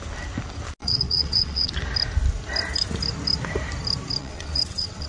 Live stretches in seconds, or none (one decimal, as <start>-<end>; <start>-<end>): 0.0-0.8; 1.7-4.2